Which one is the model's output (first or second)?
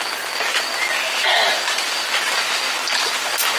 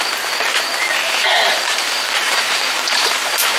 second